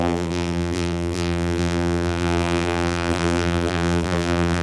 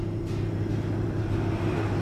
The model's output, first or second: first